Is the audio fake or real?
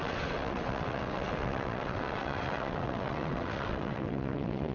fake